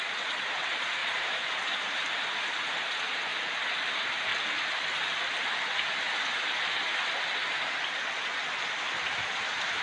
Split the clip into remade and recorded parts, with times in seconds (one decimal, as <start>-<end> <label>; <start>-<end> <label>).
0.0-3.3 remade; 3.3-3.9 recorded; 3.9-4.3 remade; 4.3-8.9 recorded; 8.9-9.8 remade